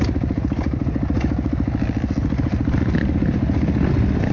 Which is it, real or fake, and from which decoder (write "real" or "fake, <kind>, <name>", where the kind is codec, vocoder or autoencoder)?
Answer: real